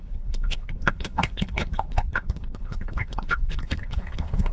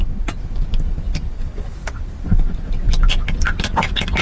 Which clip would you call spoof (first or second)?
first